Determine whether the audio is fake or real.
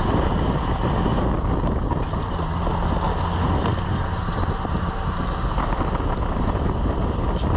real